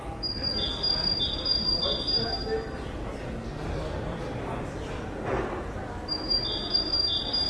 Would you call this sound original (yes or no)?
yes